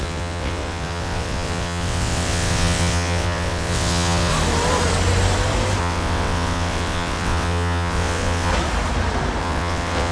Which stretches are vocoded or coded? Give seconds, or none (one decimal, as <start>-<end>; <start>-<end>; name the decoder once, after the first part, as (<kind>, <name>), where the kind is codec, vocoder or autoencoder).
0.0-4.3 (vocoder, WaveNeXt); 5.8-8.5; 9.4-10.1